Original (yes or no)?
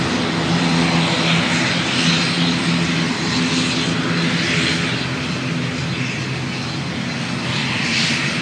yes